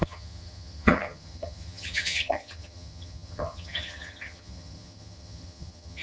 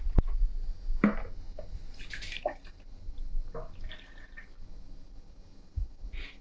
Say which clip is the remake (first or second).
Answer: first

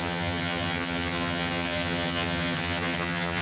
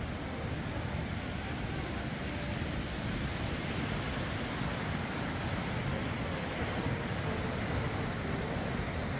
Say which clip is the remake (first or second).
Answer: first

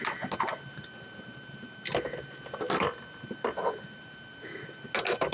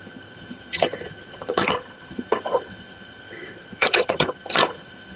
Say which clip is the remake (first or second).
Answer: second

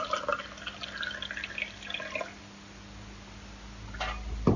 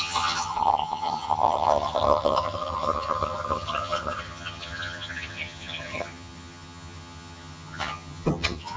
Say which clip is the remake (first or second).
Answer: second